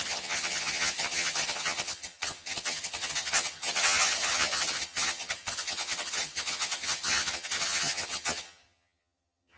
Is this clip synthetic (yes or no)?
yes